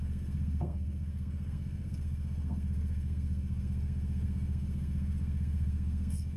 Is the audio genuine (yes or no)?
no